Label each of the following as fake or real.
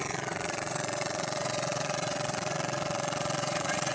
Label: fake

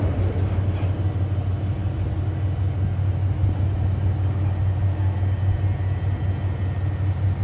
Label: real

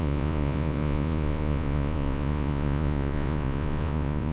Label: fake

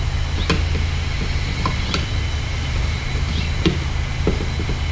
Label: real